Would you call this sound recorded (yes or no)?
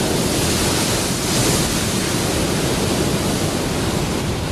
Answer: yes